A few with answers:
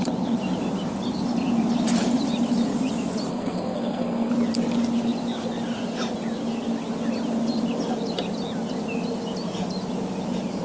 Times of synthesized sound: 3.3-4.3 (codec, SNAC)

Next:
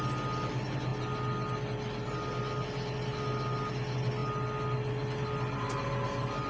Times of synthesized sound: none

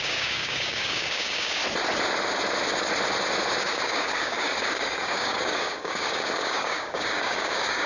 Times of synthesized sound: 0.0-1.6 (codec, DAC); 3.6-7.9

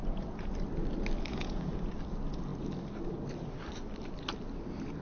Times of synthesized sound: 0.0-0.5 (vocoder, Vocos); 1.3-1.9

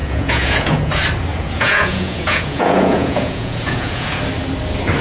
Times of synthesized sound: 0.0-0.9 (vocoder, Vocos); 1.3-4.2

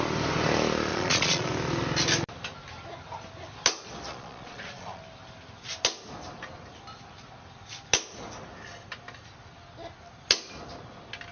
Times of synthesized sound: 0.9-1.5 (vocoder, Vocos); 4.1-5.0

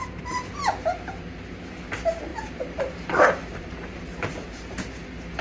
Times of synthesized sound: 2.3-4.0 (vocoder, BigVGAN v2)

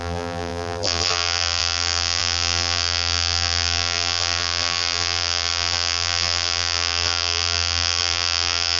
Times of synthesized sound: 0.0-8.8 (vocoder, BigVGAN v2)